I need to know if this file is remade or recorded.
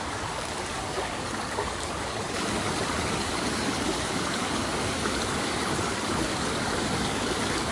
remade